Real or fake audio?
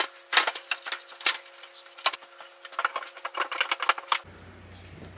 real